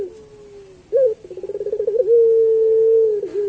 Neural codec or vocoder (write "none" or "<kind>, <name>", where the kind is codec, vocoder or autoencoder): none